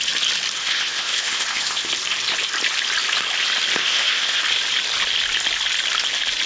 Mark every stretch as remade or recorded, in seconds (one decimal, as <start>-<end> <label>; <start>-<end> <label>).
0.0-0.6 recorded; 0.6-1.9 remade; 1.9-3.8 recorded; 3.8-4.4 remade; 4.4-6.5 recorded